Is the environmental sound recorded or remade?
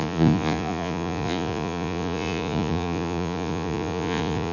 remade